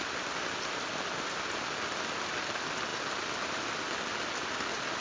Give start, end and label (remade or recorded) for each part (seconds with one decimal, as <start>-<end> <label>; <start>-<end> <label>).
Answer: 0.0-2.9 recorded; 2.9-4.0 remade; 4.0-5.0 recorded

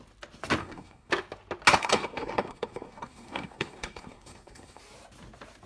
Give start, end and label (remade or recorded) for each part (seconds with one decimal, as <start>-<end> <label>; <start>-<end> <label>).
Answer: 0.0-0.6 recorded; 0.6-1.1 remade; 1.1-1.8 recorded; 1.8-4.8 remade; 4.8-5.7 recorded